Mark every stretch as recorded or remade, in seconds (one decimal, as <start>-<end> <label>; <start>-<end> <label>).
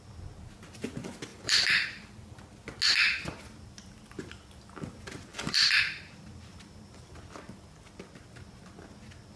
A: 0.0-1.3 recorded; 1.3-2.4 remade; 2.4-5.3 recorded; 5.3-5.8 remade; 5.8-9.4 recorded